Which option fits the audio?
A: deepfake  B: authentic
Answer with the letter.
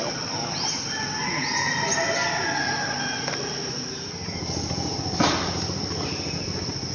B